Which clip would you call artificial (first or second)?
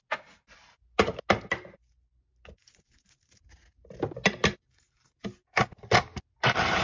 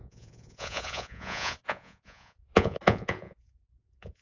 second